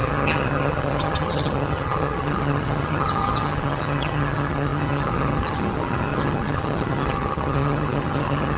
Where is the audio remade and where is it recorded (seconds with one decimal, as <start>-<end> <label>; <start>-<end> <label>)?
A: 0.0-8.6 remade

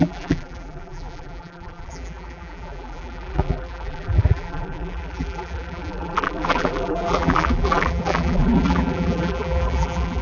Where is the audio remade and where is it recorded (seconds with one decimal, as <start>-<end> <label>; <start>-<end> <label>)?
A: 0.0-10.2 remade

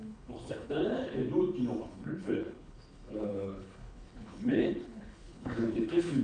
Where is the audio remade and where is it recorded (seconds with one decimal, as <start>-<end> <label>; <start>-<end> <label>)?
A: 0.0-1.2 remade; 1.2-1.8 recorded; 1.8-6.2 remade

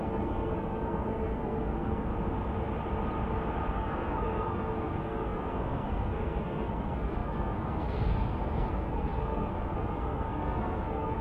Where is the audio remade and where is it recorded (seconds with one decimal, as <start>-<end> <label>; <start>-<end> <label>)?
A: 0.0-2.1 remade; 2.1-3.7 recorded; 3.7-11.2 remade

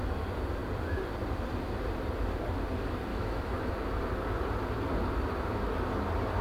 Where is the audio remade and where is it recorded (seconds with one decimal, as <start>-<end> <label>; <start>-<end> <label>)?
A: 0.0-3.1 recorded; 3.1-3.7 remade; 3.7-6.4 recorded

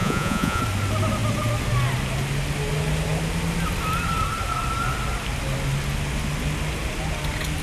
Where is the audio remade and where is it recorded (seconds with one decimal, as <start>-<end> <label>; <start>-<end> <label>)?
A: 0.0-0.6 remade; 0.6-7.6 recorded

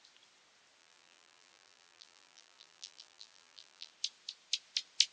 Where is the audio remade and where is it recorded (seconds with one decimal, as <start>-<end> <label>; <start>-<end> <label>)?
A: 0.0-0.8 recorded; 0.8-3.9 remade; 3.9-5.1 recorded

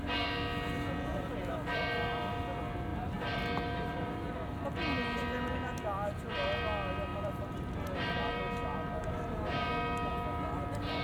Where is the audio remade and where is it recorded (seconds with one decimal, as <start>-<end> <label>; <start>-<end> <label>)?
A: 0.0-2.9 recorded; 2.9-4.3 remade; 4.3-7.1 recorded; 7.1-8.4 remade; 8.4-9.0 recorded; 9.0-9.7 remade; 9.7-11.0 recorded